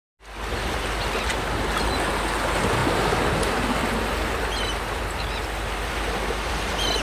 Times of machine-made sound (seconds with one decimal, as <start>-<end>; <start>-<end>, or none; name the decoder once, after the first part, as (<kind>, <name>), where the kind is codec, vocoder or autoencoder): none